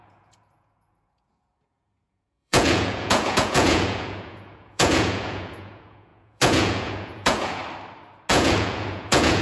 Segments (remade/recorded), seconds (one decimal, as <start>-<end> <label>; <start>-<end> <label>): 0.0-7.6 remade; 7.6-8.3 recorded; 8.3-9.4 remade